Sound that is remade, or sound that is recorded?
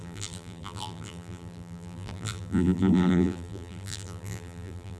remade